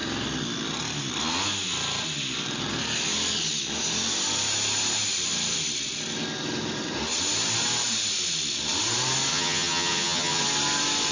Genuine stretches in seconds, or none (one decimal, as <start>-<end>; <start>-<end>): 0.0-9.3; 10.4-11.1